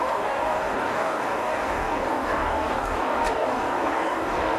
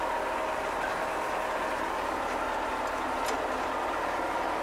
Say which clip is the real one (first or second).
second